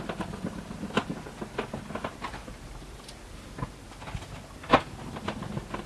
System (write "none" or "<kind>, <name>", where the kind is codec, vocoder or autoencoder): none